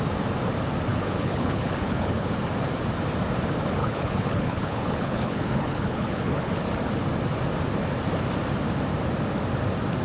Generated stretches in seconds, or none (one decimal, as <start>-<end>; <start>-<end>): 0.9-2.4; 3.8-6.5

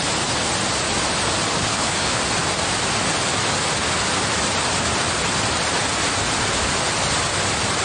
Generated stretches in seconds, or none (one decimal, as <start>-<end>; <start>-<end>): 1.6-2.2

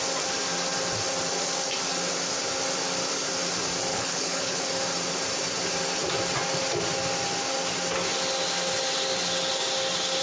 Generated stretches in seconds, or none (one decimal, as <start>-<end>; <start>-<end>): 3.9-4.6

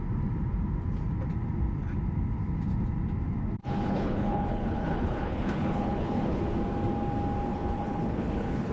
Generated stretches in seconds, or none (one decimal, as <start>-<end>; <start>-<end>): 3.6-6.4; 7.5-8.7